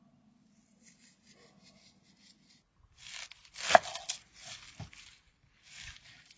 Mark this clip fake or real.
real